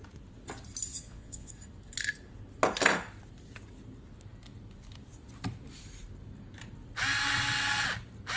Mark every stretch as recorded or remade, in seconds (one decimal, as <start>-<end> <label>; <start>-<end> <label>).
0.0-0.9 recorded; 0.9-1.5 remade; 1.5-8.4 recorded